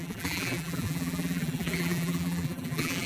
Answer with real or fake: fake